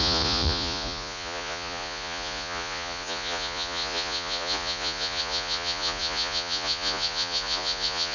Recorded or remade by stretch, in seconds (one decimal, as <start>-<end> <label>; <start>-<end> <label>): 0.0-8.1 remade